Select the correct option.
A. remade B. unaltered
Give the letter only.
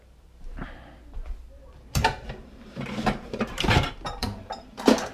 A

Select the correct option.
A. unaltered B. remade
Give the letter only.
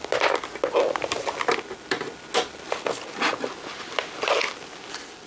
A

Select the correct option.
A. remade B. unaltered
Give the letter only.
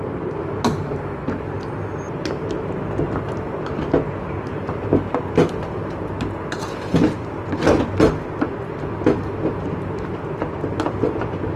B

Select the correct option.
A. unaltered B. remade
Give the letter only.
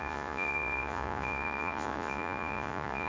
B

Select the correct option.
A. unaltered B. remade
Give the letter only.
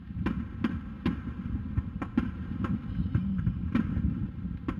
A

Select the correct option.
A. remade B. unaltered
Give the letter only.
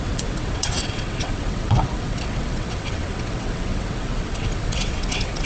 A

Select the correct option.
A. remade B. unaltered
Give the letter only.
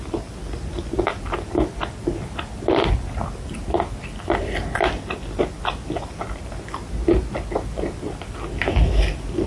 B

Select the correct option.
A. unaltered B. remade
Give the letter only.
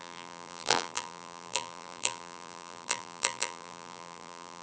B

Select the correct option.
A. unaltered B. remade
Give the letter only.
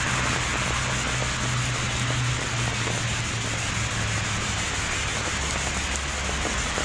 A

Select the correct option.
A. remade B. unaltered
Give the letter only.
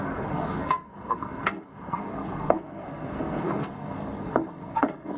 A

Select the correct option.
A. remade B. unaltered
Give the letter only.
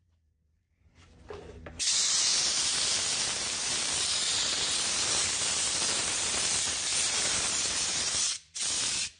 A